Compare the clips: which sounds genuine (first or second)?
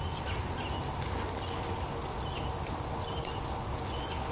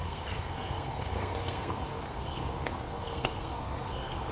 first